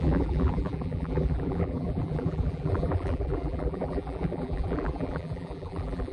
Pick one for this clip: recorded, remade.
remade